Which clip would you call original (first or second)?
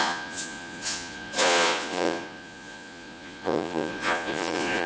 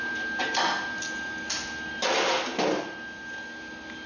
second